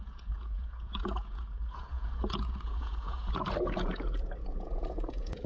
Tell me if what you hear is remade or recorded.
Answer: remade